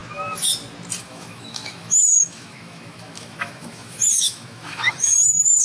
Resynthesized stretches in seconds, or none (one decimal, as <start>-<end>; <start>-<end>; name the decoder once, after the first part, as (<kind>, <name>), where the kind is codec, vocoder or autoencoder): 1.0-5.6 (autoencoder, DAC-VAE)